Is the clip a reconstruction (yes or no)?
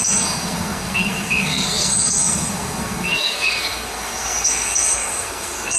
yes